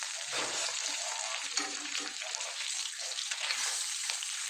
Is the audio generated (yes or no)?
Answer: yes